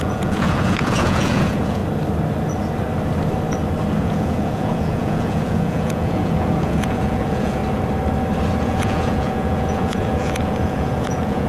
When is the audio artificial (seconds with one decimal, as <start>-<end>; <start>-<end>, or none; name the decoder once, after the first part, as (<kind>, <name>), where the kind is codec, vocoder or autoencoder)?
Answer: 0.0-1.8 (vocoder, Vocos); 4.0-7.6; 8.6-11.5